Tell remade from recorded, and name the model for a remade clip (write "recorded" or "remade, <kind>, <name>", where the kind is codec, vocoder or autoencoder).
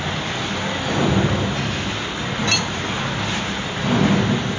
recorded